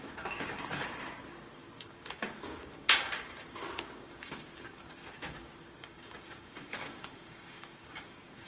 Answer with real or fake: fake